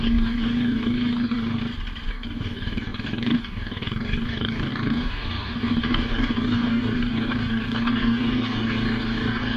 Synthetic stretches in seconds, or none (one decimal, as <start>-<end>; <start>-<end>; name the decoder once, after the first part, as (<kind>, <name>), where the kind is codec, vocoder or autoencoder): 0.0-1.6 (codec, DAC); 2.1-9.6

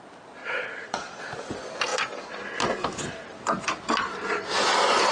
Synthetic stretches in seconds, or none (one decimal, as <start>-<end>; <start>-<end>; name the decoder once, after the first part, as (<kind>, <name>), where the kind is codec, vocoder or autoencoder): 0.4-1.2 (vocoder, Vocos)

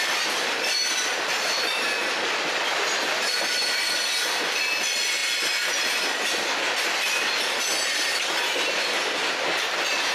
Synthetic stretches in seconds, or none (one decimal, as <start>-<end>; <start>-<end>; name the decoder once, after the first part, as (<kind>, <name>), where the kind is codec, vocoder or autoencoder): none

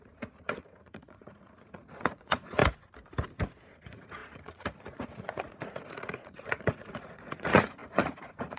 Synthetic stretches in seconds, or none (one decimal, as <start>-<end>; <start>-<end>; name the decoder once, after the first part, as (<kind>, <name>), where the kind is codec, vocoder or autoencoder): 0.0-2.6 (vocoder, Vocos); 3.8-8.6

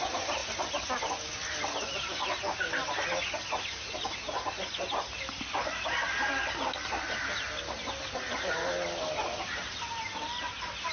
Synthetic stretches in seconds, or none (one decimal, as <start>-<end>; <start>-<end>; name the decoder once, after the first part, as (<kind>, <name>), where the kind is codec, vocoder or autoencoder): none

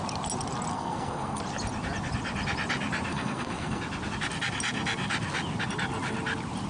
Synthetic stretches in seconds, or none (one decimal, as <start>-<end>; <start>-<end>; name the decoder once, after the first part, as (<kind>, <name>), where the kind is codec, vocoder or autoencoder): 0.7-1.4 (codec, SNAC); 3.1-3.8